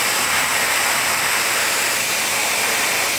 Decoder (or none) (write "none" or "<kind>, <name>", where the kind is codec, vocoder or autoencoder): none